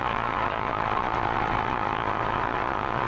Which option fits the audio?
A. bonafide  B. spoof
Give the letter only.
B